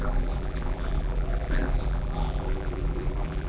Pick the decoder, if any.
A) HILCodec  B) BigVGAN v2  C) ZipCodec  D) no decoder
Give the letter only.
B